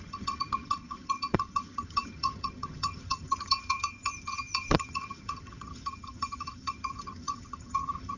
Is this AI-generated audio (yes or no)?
yes